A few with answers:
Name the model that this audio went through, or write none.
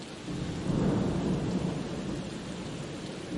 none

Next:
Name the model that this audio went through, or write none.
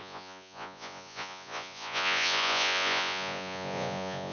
vocoder, Vocos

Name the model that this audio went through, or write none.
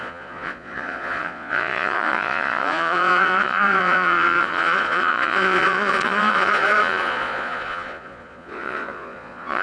vocoder, Vocos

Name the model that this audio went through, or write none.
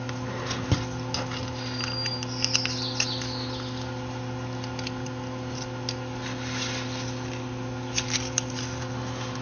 none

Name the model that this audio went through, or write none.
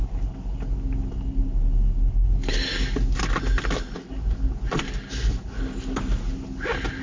none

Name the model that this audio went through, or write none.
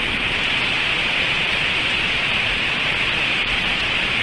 vocoder, Vocos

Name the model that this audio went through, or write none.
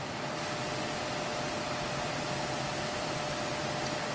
none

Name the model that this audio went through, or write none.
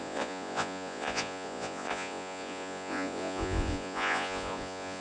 vocoder, Vocos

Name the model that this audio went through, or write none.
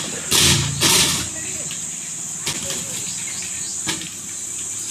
none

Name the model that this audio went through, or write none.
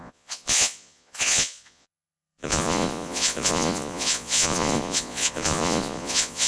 vocoder, Vocos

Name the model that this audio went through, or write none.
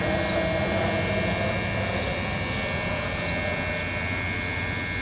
none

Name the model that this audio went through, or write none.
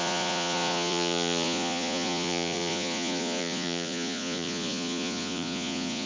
vocoder, Vocos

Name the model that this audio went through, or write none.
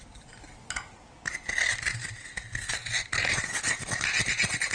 none